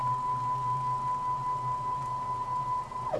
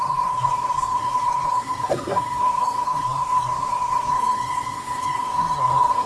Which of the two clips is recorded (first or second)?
first